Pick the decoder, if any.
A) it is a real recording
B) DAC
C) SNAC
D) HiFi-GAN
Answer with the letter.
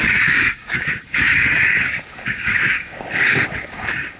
B